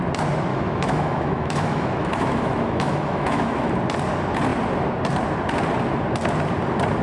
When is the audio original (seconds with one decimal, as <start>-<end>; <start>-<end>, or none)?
0.0-0.5; 3.7-7.0